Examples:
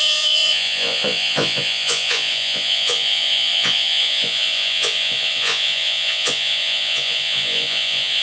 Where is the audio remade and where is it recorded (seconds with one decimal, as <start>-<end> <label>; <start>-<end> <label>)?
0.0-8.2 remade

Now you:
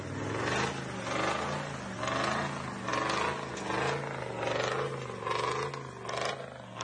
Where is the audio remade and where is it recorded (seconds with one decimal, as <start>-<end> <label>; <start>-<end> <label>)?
0.0-6.8 recorded

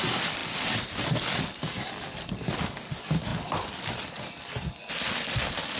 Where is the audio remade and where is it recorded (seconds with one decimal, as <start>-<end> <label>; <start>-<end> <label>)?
0.0-5.8 recorded

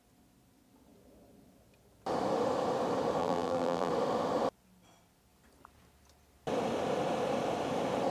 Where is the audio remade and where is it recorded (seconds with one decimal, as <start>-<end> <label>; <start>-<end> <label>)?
0.0-3.2 recorded; 3.2-3.9 remade; 3.9-8.1 recorded